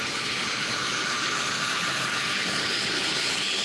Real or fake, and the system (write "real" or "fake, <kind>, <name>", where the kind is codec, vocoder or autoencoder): fake, codec, HILCodec